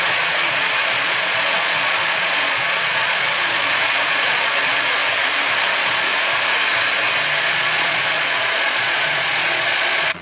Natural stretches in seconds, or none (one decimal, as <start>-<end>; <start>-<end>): 5.0-5.6; 6.1-7.4